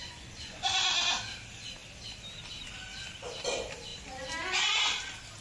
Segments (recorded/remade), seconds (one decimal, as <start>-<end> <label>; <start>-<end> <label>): 0.0-0.9 remade; 0.9-5.4 recorded